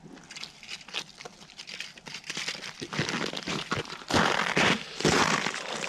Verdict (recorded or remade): remade